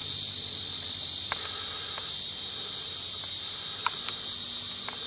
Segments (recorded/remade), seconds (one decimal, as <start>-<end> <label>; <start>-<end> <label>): 0.0-5.1 recorded